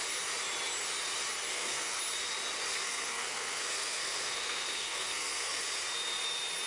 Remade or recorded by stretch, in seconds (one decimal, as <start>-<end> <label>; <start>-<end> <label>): 0.0-1.5 recorded; 1.5-2.0 remade; 2.0-2.7 recorded; 2.7-5.6 remade; 5.6-6.7 recorded